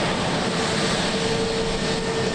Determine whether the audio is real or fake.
real